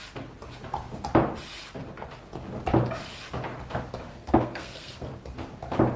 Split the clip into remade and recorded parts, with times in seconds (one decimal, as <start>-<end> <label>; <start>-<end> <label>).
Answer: 0.0-4.1 recorded; 4.1-5.1 remade; 5.1-6.0 recorded